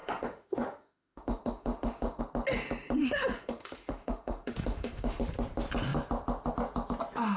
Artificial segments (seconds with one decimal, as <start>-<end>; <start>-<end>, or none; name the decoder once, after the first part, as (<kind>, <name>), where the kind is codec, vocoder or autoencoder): 0.0-2.2 (autoencoder, DAC-VAE); 3.0-5.2